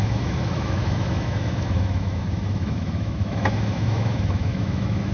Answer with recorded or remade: remade